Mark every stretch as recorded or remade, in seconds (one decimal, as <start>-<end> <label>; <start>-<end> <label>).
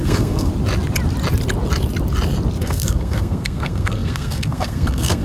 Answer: 0.0-0.5 remade; 0.5-2.6 recorded; 2.6-5.2 remade